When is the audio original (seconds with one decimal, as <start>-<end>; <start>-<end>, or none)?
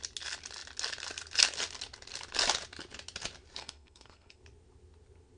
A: 0.0-3.6; 4.4-5.4